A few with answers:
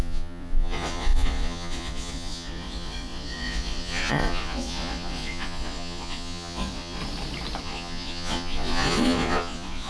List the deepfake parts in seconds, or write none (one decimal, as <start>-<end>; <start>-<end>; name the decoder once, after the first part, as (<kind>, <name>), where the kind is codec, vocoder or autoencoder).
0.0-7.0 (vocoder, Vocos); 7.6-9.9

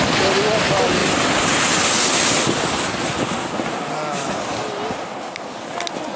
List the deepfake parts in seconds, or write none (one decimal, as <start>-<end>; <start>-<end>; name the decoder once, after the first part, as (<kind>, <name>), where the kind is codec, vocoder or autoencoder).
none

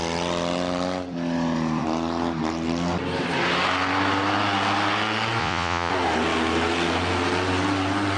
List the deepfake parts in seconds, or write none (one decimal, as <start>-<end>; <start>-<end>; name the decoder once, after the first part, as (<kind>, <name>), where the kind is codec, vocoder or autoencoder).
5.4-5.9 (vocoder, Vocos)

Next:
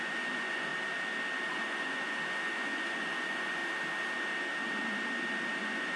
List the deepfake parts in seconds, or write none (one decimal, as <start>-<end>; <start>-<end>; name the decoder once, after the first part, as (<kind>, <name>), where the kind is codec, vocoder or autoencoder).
0.0-0.7 (vocoder, Vocos); 1.5-3.6; 5.6-6.0

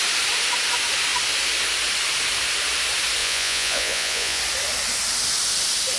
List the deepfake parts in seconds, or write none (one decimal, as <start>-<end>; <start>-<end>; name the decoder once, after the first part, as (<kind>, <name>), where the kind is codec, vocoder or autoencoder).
3.2-4.4 (vocoder, Vocos)